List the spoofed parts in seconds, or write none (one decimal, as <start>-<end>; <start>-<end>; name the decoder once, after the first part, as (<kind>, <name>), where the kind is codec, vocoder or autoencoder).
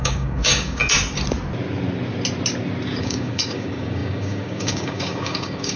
0.0-0.8 (codec, DAC); 3.0-5.8